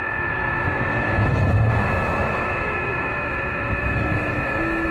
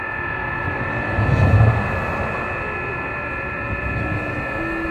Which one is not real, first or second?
first